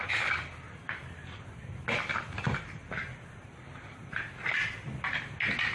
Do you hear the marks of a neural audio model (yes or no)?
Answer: no